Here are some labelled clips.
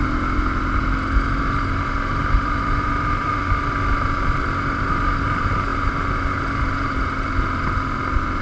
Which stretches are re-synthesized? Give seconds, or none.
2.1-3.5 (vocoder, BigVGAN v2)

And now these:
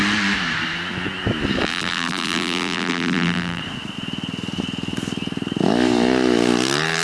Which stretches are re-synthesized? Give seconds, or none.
1.7-3.6 (vocoder, BigVGAN v2)

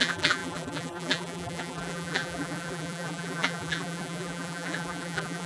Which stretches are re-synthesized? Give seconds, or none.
0.0-5.5 (vocoder, BigVGAN v2)